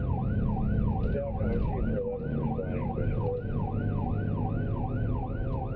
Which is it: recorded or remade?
recorded